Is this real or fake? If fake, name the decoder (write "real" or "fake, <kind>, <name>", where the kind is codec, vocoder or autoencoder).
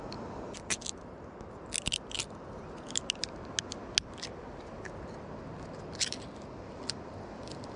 real